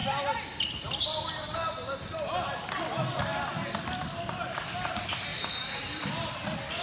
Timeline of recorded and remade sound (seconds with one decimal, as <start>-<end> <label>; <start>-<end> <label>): 0.0-5.3 recorded; 5.3-6.0 remade; 6.0-6.8 recorded